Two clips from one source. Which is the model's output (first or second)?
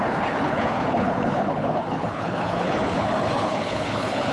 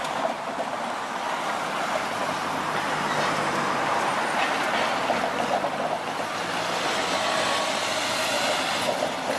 first